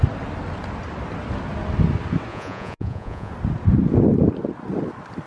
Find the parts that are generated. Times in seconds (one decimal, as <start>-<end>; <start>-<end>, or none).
2.3-3.3